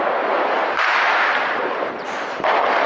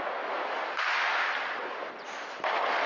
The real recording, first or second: second